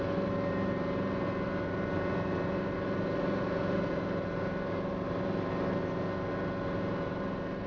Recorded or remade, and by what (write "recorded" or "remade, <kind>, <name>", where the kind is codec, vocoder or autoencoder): recorded